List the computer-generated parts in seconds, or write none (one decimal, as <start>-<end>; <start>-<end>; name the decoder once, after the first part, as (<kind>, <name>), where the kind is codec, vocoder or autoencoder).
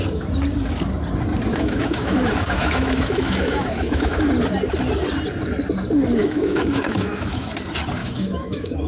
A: 1.5-4.2 (autoencoder, DAC-VAE); 6.2-7.5; 8.0-8.9